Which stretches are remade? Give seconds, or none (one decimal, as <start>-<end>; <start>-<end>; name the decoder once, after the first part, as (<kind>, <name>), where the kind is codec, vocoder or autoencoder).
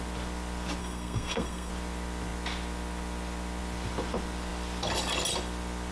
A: 0.8-1.7 (codec, SNAC)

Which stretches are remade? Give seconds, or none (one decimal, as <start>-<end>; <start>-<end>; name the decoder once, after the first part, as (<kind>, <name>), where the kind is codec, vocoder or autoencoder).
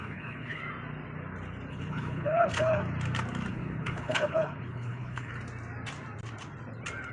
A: 0.0-0.6 (codec, HILCodec); 1.7-2.8; 3.5-5.3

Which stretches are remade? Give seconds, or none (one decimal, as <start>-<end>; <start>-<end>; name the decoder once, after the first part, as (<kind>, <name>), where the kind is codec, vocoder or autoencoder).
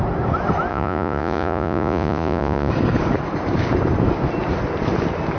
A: 0.7-2.7 (vocoder, Vocos)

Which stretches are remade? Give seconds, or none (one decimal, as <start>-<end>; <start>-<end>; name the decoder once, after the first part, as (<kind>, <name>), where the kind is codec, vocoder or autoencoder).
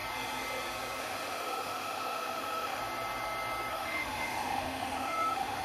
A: 1.0-2.8 (autoencoder, DAC-VAE); 3.7-5.6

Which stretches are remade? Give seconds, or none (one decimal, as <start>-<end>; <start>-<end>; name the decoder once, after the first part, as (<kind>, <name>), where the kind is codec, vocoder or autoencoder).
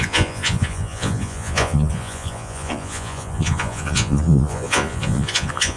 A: 0.0-5.8 (vocoder, Vocos)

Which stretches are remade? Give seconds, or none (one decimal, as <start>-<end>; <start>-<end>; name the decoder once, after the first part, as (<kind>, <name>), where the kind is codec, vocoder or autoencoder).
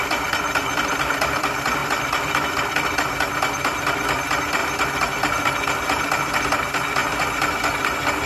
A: 0.0-4.6 (vocoder, BigVGAN v2); 6.4-7.0; 7.8-8.3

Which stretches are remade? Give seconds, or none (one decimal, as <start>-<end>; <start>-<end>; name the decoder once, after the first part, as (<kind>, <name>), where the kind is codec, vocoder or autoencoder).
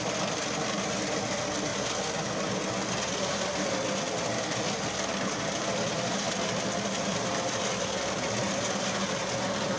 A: none